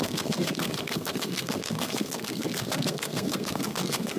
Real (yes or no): no